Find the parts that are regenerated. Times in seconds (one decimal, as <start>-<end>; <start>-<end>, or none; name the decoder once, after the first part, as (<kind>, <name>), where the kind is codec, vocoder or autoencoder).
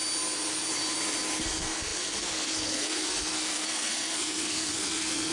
1.4-5.3 (codec, SNAC)